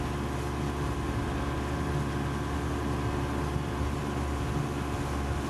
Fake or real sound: real